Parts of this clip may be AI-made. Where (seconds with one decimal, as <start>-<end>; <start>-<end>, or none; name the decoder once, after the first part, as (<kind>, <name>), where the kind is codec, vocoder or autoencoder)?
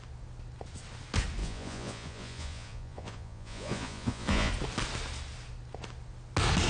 1.4-4.5 (vocoder, Vocos)